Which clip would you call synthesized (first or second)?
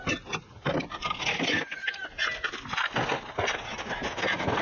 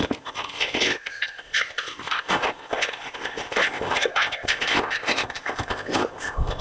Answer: second